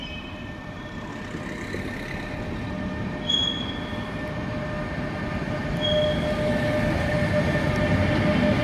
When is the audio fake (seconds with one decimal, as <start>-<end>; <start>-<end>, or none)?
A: 0.0-1.1